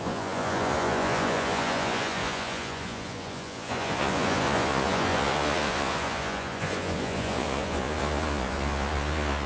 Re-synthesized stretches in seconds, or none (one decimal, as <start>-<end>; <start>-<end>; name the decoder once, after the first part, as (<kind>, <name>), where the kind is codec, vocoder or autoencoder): 0.0-9.5 (vocoder, Vocos)